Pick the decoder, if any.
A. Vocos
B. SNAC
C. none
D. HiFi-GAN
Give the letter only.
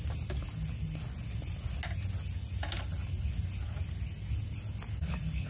C